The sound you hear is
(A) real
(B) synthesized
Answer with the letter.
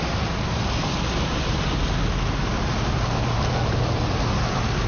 A